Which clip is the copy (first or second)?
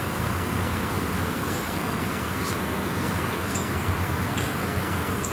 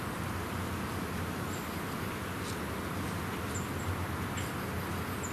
first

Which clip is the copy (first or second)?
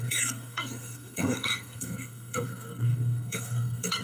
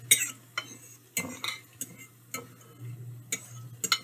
first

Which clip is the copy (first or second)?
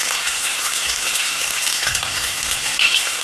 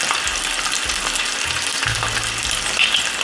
first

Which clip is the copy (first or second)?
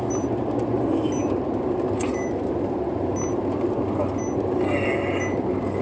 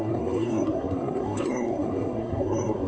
second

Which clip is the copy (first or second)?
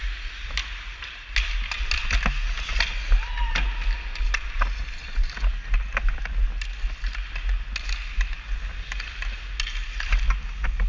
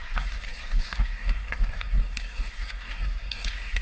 second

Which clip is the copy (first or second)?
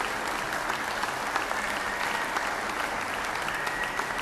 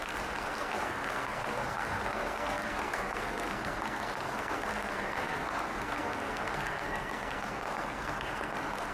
second